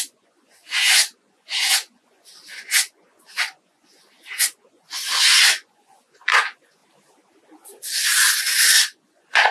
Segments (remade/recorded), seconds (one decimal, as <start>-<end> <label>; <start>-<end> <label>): 0.0-6.8 remade; 6.8-8.4 recorded; 8.4-9.5 remade